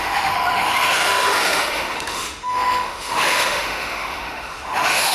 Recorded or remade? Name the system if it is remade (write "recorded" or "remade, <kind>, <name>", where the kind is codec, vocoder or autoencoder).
remade, autoencoder, DAC-VAE